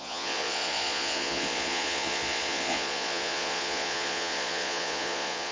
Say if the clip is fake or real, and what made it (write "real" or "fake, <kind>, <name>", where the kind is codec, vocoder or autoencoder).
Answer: fake, vocoder, Vocos